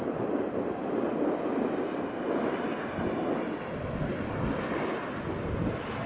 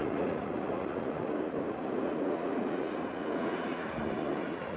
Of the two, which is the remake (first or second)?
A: second